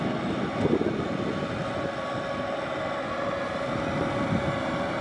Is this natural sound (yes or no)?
yes